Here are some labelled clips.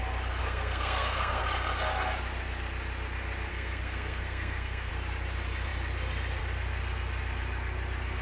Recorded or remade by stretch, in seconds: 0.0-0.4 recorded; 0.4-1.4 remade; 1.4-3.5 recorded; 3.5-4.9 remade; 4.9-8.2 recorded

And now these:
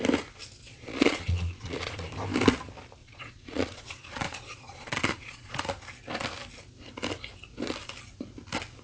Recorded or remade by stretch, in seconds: 0.0-0.7 recorded; 0.7-2.1 remade; 2.1-3.0 recorded; 3.0-5.6 remade; 5.6-8.8 recorded